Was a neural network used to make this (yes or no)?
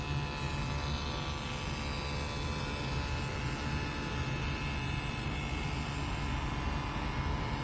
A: no